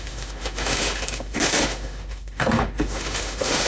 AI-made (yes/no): yes